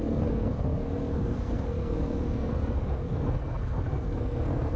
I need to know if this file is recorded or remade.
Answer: remade